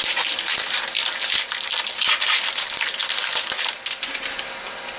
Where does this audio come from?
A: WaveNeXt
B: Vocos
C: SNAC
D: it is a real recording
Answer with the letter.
D